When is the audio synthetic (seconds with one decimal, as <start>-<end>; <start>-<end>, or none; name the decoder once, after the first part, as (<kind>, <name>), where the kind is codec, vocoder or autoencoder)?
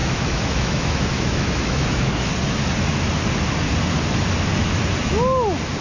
0.0-2.3 (autoencoder, DAC-VAE)